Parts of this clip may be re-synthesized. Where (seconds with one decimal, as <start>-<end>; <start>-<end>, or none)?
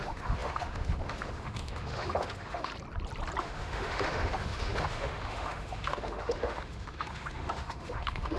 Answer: 0.0-2.7; 3.4-8.4